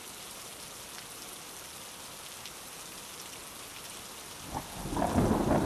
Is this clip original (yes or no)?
yes